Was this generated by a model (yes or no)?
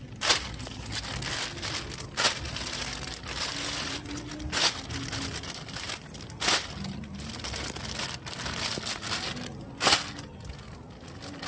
no